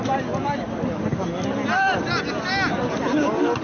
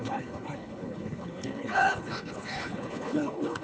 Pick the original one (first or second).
first